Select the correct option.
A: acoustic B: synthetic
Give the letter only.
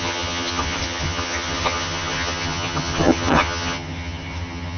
B